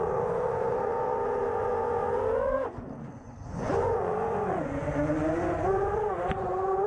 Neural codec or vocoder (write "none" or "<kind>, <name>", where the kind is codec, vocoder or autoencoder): vocoder, Vocos